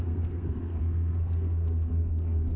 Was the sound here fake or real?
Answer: fake